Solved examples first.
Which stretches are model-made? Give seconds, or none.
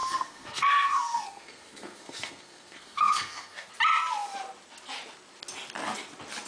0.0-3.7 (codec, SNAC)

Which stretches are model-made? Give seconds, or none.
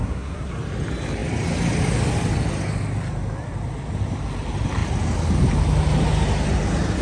0.0-0.5 (codec, SNAC)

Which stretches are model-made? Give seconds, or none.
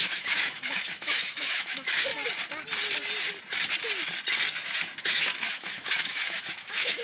0.0-2.1 (autoencoder, DAC-VAE); 5.0-7.0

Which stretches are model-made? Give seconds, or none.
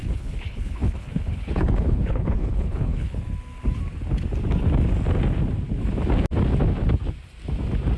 0.0-3.2 (codec, HILCodec)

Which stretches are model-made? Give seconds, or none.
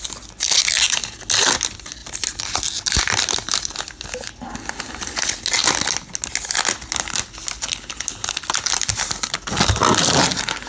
none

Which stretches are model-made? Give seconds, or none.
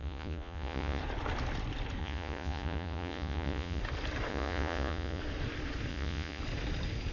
0.0-1.0 (vocoder, Vocos); 2.0-3.8; 4.3-5.2; 5.9-6.4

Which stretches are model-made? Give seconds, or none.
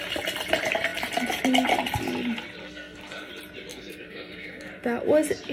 2.6-3.3 (codec, SNAC); 3.7-4.7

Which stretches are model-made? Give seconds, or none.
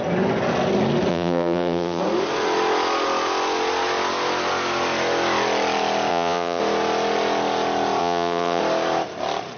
1.1-2.0 (vocoder, Vocos); 6.1-6.6; 8.0-8.6